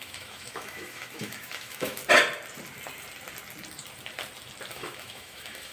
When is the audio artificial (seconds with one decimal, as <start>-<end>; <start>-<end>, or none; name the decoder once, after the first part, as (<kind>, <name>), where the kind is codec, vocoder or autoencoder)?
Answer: 0.0-2.0 (autoencoder, DAC-VAE); 4.7-5.7